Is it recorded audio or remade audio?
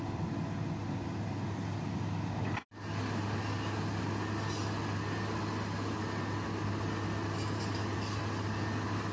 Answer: recorded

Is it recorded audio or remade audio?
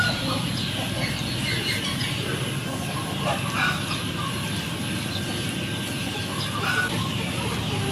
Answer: recorded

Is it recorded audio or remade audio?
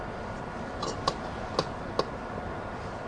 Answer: recorded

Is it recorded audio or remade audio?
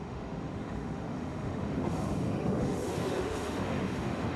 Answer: remade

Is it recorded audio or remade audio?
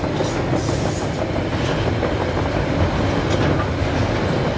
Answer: recorded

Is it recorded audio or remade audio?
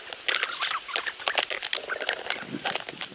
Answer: recorded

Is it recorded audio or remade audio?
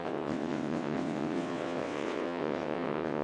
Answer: remade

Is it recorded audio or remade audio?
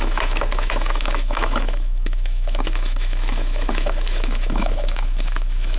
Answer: remade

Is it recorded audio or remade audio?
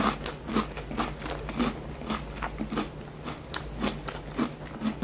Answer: recorded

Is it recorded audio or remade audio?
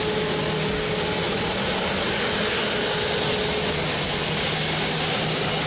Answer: recorded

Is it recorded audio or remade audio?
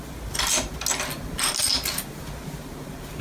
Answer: recorded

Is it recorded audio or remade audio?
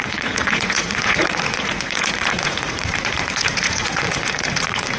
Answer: remade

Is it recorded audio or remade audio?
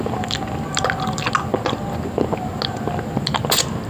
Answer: recorded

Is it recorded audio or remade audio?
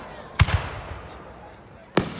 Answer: recorded